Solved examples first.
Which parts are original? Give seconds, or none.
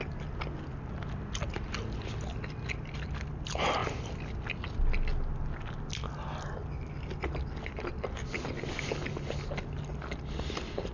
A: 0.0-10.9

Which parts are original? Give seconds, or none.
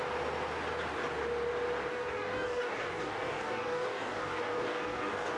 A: 0.0-1.9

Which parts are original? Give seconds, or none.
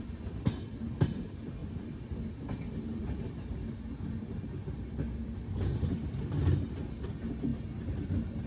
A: 0.0-8.5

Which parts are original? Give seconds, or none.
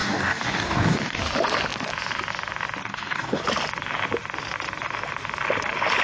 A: 1.2-2.8; 3.4-6.0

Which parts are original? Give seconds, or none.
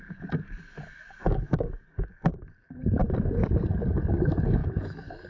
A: 3.0-3.8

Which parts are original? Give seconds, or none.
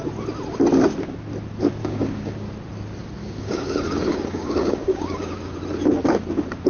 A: 0.0-1.8; 2.5-3.2; 5.5-6.7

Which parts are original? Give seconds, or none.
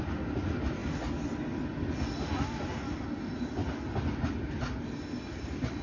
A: 0.0-5.8